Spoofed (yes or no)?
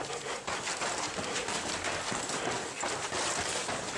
no